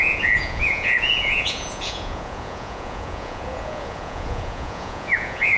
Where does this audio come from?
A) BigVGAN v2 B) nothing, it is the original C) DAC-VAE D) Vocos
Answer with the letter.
D